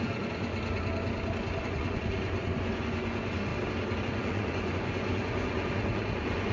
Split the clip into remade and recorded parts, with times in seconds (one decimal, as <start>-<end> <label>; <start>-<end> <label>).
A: 0.0-0.5 remade; 0.5-1.6 recorded; 1.6-3.5 remade; 3.5-4.0 recorded; 4.0-6.5 remade